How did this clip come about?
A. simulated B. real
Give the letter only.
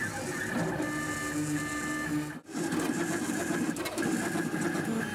B